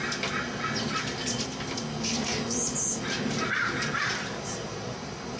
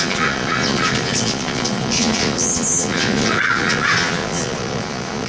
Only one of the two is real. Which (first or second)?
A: first